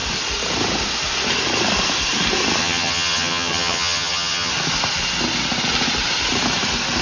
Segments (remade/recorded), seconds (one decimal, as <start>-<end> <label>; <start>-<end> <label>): 0.0-2.6 recorded; 2.6-4.5 remade; 4.5-7.0 recorded